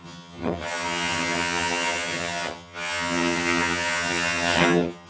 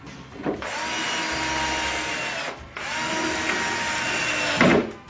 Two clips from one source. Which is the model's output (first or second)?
first